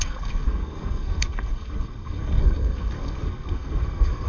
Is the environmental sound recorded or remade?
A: remade